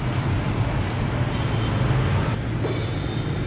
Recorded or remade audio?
recorded